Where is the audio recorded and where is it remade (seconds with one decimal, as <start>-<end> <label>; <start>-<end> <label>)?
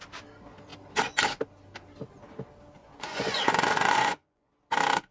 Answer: 0.0-2.8 recorded; 2.8-4.5 remade; 4.5-5.1 recorded